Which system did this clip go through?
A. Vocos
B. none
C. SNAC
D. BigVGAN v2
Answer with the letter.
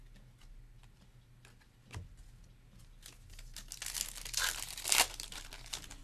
B